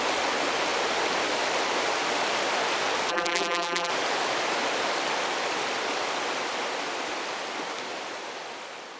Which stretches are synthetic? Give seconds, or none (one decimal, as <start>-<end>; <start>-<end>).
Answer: 3.1-3.9